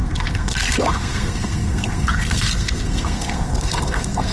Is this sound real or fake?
fake